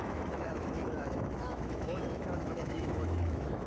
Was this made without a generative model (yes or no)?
no